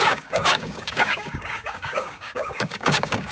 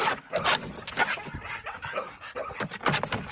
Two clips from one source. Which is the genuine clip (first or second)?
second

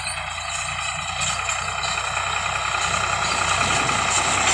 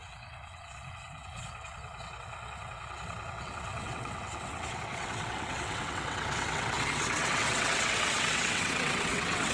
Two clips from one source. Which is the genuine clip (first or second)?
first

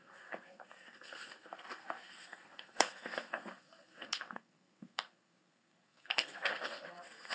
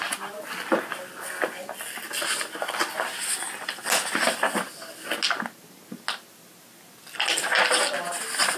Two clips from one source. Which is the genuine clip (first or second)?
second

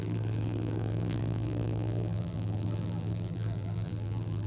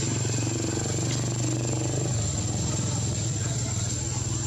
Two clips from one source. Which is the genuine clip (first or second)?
second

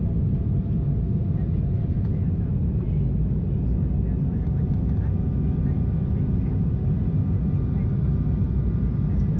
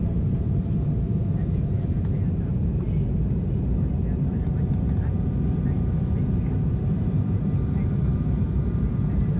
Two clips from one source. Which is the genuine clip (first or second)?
first